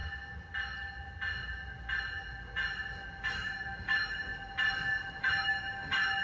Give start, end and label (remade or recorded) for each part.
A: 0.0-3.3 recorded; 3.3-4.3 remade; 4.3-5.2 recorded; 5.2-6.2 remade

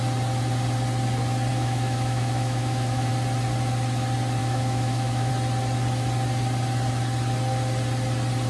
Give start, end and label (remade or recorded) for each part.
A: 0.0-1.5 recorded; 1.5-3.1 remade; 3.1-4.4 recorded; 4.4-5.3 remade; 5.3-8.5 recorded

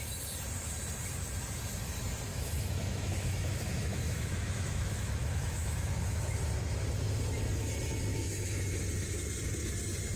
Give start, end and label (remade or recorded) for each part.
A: 0.0-2.3 recorded; 2.3-6.4 remade; 6.4-8.1 recorded; 8.1-8.7 remade; 8.7-10.2 recorded

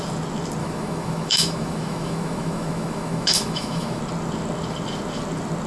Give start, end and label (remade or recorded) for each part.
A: 0.0-0.6 recorded; 0.6-4.0 remade; 4.0-5.7 recorded

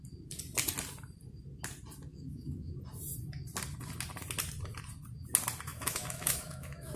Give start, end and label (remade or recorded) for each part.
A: 0.0-2.1 recorded; 2.1-2.7 remade; 2.7-5.7 recorded; 5.7-7.0 remade

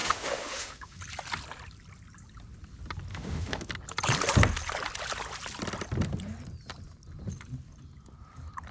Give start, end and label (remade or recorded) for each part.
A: 0.0-1.0 remade; 1.0-3.1 recorded; 3.1-3.7 remade; 3.7-8.7 recorded

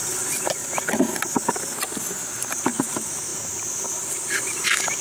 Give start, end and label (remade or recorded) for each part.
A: 0.0-5.0 recorded